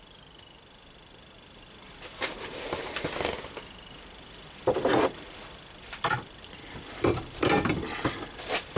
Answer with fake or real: fake